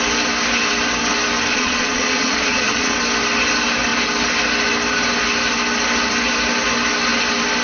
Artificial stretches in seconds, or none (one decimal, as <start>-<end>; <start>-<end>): 1.5-3.0